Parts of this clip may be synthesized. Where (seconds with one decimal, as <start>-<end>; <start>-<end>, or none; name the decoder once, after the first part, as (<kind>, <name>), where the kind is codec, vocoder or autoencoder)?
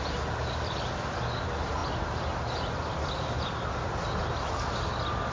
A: none